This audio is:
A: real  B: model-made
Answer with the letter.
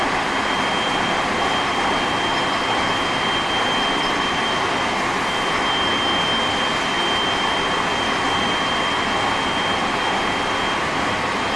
A